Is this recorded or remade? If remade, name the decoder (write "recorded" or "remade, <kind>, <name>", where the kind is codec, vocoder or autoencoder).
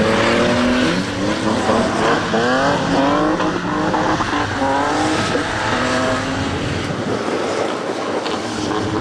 recorded